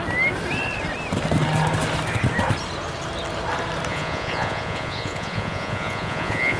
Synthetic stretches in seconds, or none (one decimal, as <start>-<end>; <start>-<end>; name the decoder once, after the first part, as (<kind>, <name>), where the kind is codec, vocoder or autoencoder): 3.9-6.6 (vocoder, Vocos)